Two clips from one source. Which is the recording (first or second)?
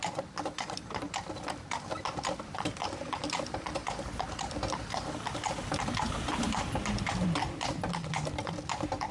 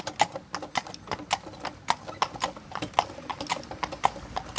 second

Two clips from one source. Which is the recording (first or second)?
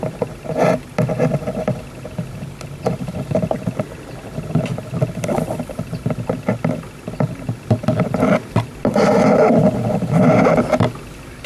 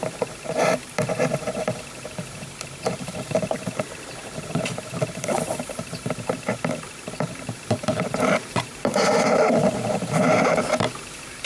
first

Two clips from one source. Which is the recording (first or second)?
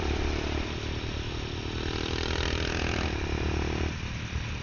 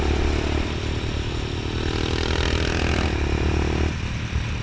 second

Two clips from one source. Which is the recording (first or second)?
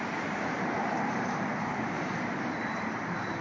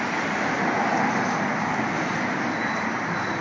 second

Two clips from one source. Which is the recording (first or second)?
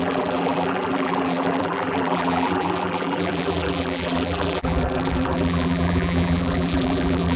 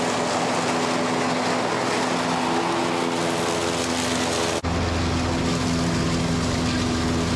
second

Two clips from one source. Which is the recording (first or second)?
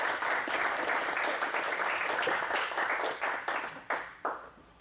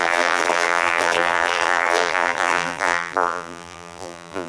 first